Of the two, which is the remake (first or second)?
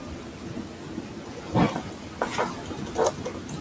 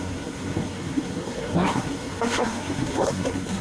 second